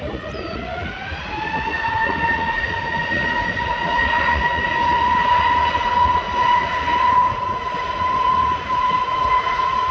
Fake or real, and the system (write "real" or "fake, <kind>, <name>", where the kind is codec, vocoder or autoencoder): fake, vocoder, Vocos